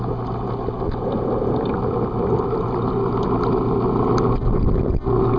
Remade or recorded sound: recorded